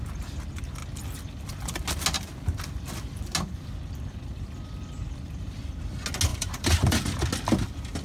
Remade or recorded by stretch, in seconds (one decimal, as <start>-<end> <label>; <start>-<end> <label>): 0.0-6.3 recorded; 6.3-7.0 remade; 7.0-8.0 recorded